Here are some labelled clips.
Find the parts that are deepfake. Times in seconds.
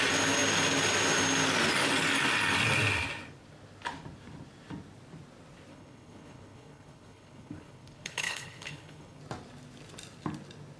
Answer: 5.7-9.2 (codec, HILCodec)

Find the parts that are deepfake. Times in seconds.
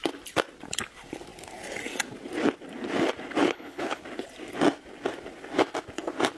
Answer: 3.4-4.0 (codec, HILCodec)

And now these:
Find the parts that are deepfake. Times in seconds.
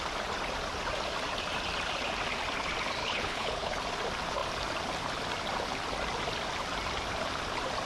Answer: 3.0-3.8 (codec, HILCodec)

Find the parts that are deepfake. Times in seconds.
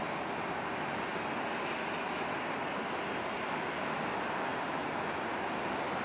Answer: none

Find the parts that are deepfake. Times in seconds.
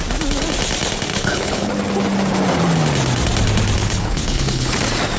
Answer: 1.1-1.7 (codec, HILCodec); 3.8-4.8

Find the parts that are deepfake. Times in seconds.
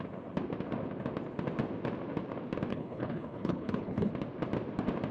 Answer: 2.7-4.1 (codec, HILCodec)